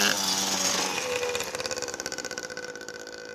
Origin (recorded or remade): recorded